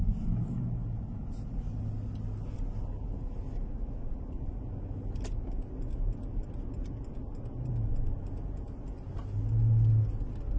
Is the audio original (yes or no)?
yes